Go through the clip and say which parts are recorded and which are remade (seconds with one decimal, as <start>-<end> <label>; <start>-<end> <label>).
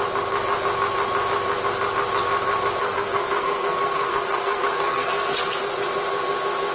0.0-2.8 recorded; 2.8-5.5 remade; 5.5-6.7 recorded